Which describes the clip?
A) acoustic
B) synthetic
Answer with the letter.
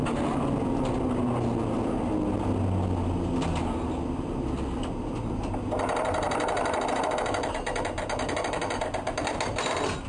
A